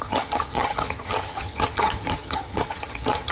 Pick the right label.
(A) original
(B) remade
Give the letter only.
B